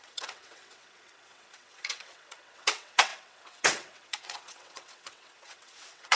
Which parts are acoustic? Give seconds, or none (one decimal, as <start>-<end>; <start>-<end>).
none